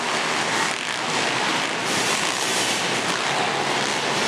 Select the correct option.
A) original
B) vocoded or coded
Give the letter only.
A